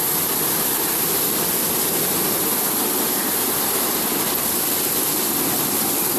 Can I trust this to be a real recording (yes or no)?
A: yes